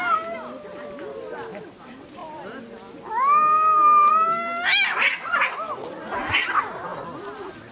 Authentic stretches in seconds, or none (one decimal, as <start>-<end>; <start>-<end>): 0.0-7.7